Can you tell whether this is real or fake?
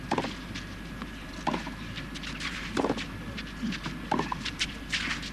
fake